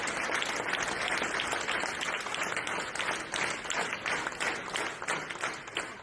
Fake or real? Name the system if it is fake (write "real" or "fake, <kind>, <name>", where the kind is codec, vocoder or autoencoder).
real